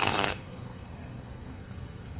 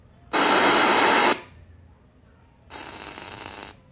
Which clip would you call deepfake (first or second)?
first